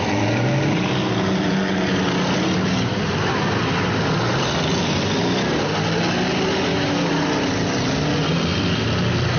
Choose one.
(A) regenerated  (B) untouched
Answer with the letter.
B